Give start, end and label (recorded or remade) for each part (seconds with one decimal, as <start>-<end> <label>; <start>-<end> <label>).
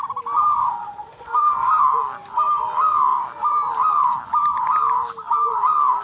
0.0-0.6 recorded; 0.6-1.8 remade; 1.8-6.0 recorded